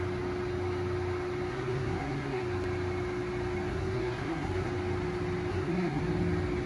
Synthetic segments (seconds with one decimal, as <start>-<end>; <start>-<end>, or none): 1.5-2.4; 3.7-4.7; 5.5-6.0